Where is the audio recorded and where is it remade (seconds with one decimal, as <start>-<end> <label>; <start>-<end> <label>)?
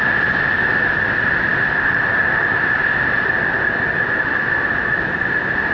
0.0-5.7 recorded